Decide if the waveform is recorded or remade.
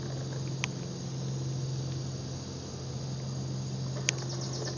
recorded